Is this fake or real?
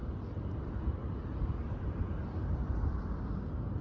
fake